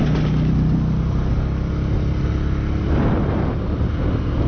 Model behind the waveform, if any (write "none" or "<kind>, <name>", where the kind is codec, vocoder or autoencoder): none